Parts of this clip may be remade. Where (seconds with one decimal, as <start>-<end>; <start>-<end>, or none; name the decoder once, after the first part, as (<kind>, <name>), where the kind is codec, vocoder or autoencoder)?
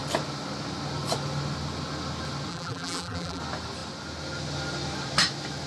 2.5-3.4 (vocoder, BigVGAN v2)